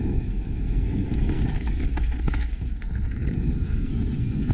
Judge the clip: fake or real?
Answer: fake